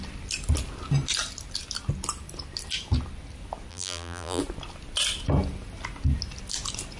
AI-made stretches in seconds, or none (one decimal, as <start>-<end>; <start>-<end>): 3.7-4.4